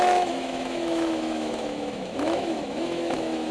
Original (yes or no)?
no